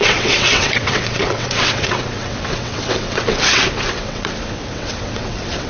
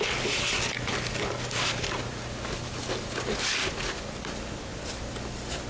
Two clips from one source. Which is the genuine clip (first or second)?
second